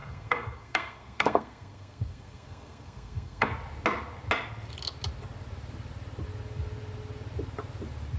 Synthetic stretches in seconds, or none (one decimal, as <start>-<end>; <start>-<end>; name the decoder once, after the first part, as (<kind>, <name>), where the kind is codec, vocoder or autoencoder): 0.0-3.5 (codec, SNAC)